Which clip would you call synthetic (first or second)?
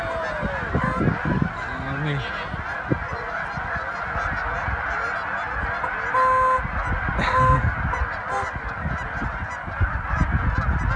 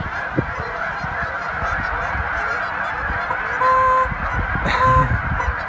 second